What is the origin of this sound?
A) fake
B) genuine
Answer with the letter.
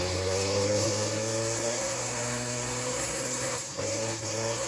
A